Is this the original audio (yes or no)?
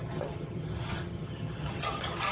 no